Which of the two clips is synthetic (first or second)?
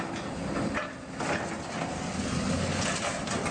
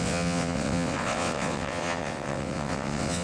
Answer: second